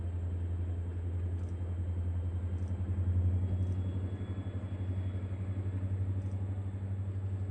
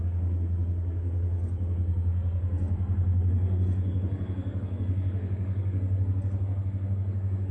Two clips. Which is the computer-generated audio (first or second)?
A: second